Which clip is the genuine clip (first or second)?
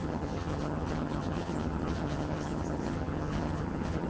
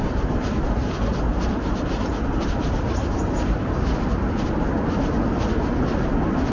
second